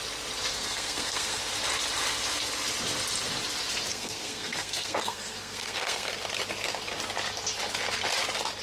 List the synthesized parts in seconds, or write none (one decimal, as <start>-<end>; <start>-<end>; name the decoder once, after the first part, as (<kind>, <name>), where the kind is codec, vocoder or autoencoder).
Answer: 0.5-1.4 (codec, SNAC); 3.9-6.1